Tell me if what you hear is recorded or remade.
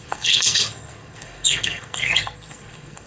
remade